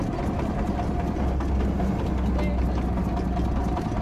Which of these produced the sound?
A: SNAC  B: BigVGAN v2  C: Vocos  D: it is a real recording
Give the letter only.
D